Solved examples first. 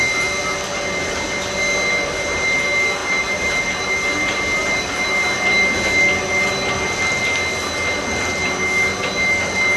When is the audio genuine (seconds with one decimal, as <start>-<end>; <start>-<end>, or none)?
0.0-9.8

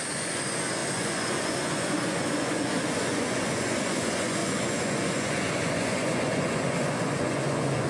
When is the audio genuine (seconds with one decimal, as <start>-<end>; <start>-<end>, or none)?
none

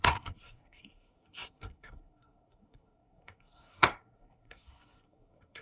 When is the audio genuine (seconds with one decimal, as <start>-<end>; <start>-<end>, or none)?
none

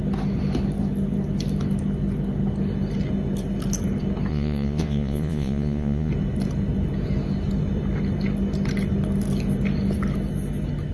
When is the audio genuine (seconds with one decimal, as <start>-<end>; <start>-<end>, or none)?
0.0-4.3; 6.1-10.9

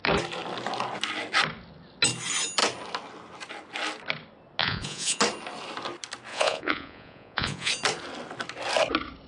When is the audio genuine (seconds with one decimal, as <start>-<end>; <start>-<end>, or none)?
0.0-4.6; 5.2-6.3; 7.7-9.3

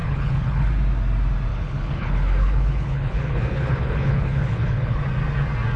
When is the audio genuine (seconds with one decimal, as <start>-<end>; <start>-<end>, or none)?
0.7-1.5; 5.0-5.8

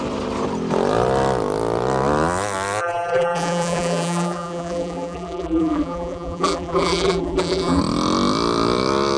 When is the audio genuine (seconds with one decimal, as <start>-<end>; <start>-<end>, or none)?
0.0-2.8; 7.8-9.2